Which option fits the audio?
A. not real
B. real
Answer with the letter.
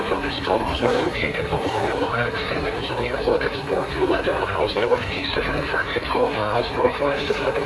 A